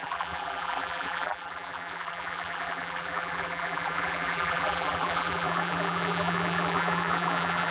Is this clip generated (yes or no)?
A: yes